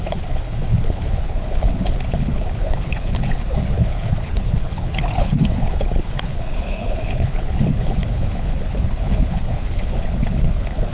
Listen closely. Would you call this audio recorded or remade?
remade